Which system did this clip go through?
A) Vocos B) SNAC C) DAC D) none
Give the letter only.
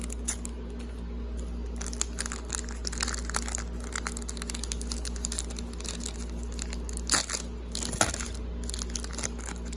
D